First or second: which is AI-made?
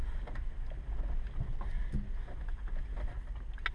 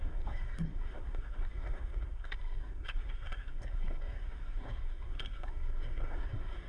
second